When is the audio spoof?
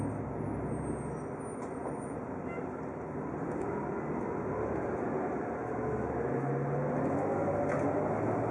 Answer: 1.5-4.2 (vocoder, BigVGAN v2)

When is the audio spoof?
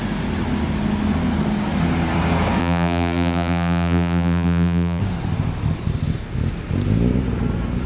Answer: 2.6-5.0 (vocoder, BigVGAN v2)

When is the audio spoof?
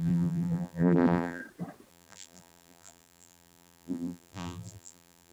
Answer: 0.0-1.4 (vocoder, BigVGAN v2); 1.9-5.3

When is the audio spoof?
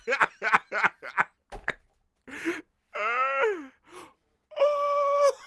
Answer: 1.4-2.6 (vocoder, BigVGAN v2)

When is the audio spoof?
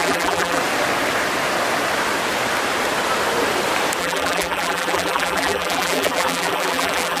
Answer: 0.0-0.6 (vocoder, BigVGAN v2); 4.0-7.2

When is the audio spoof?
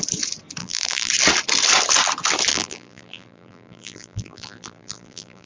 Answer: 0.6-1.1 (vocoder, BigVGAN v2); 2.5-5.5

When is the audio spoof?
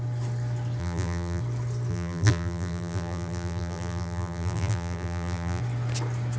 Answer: 0.8-1.4 (vocoder, BigVGAN v2); 1.9-5.6